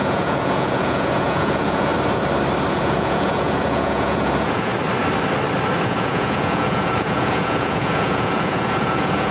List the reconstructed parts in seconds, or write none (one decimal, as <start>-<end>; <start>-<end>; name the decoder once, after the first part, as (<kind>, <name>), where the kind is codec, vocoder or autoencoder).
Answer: 0.0-1.9 (vocoder, Vocos); 2.7-4.7; 5.8-9.3